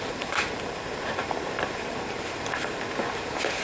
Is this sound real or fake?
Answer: fake